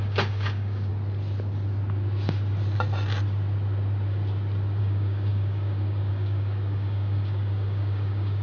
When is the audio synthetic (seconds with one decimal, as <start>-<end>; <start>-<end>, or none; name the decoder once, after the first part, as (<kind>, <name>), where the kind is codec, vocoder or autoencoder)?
0.0-0.9 (codec, DAC); 4.8-8.4